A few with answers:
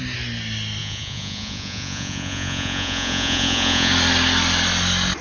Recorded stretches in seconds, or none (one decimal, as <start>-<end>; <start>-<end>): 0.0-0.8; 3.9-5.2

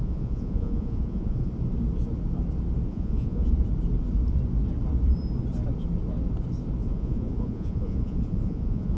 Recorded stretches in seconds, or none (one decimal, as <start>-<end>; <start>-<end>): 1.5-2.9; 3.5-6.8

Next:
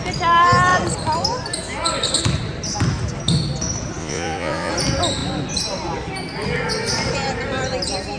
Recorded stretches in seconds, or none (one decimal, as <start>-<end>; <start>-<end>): 0.0-4.0; 4.7-8.2

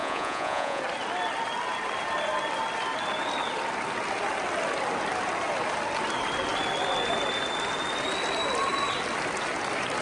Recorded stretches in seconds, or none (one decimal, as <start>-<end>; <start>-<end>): 0.8-10.0

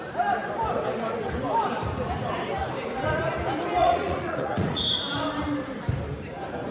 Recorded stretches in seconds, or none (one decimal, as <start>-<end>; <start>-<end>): 0.0-3.8; 4.8-6.7

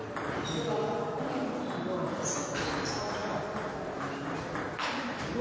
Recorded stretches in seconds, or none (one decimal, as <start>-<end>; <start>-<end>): 0.0-5.4